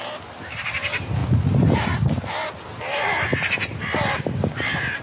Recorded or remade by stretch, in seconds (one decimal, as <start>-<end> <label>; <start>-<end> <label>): 0.0-5.0 recorded